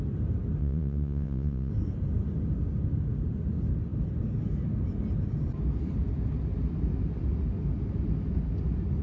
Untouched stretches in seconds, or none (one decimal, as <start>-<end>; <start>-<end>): 0.0-0.6; 1.7-9.0